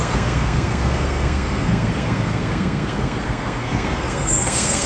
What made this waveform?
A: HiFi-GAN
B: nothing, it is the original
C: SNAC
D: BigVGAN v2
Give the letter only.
C